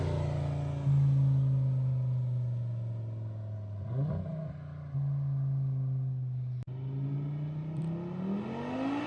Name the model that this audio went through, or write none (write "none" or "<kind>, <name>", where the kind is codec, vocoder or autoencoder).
none